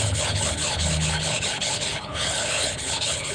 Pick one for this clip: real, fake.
fake